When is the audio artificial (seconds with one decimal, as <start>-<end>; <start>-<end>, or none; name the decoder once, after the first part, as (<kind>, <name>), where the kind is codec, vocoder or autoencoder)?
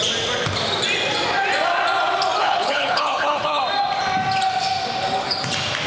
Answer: 2.4-3.6 (codec, HILCodec)